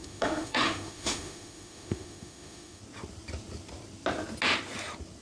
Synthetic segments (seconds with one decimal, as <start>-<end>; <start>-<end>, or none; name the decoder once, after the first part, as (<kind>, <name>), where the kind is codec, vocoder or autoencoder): 0.0-2.8 (autoencoder, DAC-VAE)